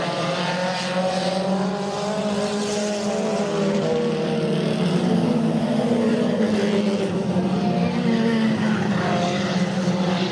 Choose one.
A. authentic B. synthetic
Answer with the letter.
A